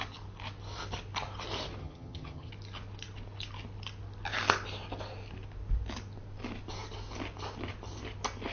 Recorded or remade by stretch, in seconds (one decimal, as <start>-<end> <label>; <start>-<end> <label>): 0.0-1.8 recorded; 1.8-2.5 remade; 2.5-8.5 recorded

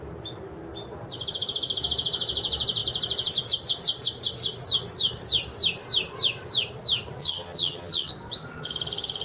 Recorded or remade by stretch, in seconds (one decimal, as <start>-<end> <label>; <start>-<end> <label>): 0.0-7.2 recorded; 7.2-8.1 remade; 8.1-9.2 recorded

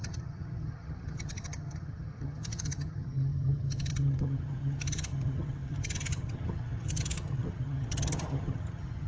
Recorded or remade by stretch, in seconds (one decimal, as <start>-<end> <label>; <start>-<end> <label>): 0.0-9.1 remade

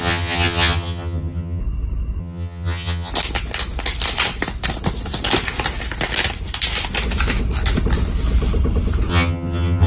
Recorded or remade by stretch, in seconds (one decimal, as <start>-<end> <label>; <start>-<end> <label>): 0.0-1.6 remade; 1.6-2.2 recorded; 2.2-3.1 remade; 3.1-9.1 recorded; 9.1-9.9 remade